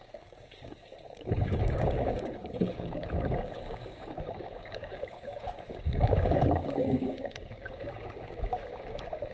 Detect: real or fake fake